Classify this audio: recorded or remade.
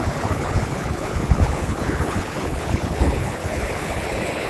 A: remade